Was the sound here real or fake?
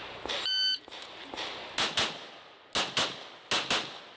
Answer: real